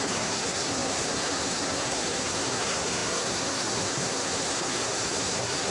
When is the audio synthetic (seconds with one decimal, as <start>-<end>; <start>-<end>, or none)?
0.0-5.7